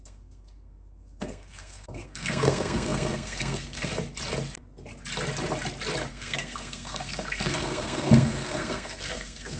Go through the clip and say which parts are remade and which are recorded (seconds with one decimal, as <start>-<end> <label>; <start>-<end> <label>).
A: 0.0-3.9 remade; 3.9-6.1 recorded; 6.1-9.6 remade